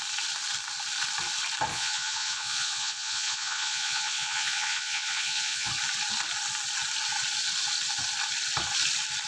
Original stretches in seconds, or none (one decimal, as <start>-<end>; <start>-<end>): 0.0-1.7; 5.7-9.3